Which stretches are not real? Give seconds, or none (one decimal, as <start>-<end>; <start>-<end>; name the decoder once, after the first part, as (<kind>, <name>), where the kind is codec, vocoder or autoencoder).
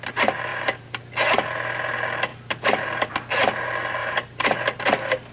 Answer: 0.5-1.0 (vocoder, BigVGAN v2); 2.3-3.1; 4.0-4.6